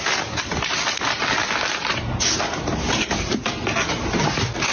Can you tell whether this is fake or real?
real